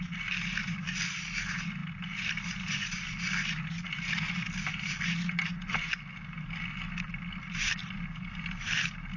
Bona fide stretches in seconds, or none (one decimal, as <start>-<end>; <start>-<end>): 0.0-9.2